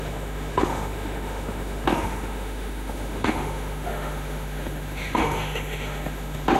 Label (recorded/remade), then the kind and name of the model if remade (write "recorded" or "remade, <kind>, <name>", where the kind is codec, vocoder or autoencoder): remade, autoencoder, DAC-VAE